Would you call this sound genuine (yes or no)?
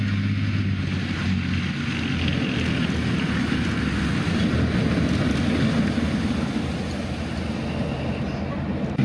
yes